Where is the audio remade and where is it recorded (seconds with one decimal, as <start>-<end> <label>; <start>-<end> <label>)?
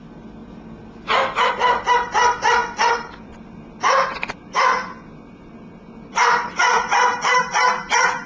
0.0-2.6 recorded; 2.6-7.4 remade; 7.4-8.3 recorded